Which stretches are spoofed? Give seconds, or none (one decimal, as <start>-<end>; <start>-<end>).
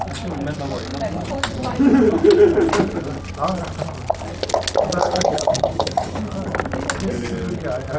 5.0-6.2